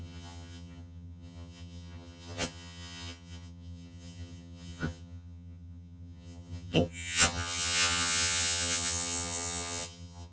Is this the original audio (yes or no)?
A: no